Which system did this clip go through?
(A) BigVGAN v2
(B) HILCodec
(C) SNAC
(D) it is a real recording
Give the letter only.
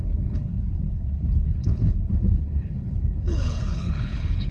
B